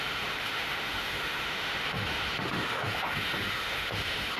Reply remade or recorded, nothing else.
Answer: remade